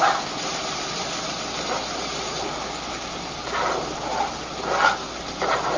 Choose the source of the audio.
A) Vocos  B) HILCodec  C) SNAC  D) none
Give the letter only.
D